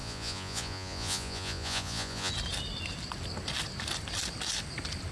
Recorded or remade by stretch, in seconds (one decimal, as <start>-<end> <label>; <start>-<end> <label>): 0.0-2.3 remade; 2.3-5.1 recorded